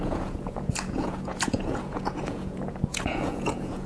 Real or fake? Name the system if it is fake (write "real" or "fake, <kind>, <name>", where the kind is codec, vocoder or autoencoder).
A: fake, vocoder, Vocos